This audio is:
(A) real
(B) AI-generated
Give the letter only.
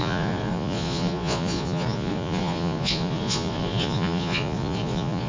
B